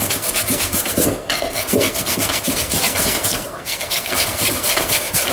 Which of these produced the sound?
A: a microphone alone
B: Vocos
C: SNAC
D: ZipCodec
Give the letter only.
C